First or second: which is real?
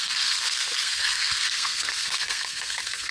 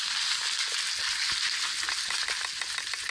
second